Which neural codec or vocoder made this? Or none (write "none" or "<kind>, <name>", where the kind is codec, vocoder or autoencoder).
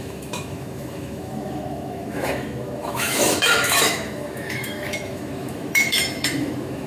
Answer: autoencoder, DAC-VAE